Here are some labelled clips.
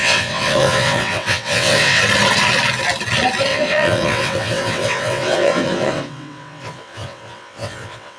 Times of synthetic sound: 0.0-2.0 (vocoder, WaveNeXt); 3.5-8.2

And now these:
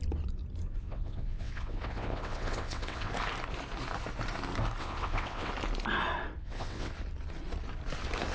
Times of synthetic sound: 0.8-3.1 (vocoder, WaveNeXt); 4.8-5.5; 6.4-6.9